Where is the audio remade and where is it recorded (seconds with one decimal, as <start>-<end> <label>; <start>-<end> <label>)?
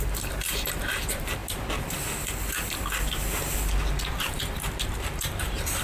0.0-1.4 remade; 1.4-4.1 recorded; 4.1-5.8 remade